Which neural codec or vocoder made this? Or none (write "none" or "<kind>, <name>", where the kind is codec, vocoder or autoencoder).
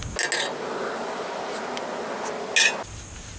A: none